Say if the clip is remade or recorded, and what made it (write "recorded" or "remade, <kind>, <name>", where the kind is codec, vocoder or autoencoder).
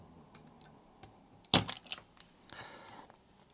recorded